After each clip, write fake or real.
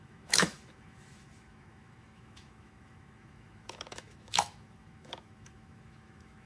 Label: fake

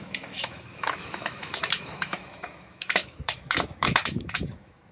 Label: fake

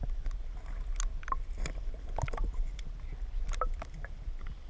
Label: real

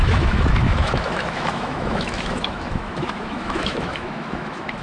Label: fake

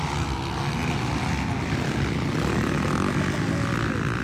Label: real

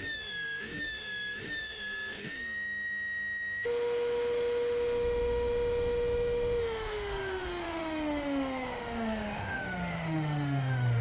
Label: fake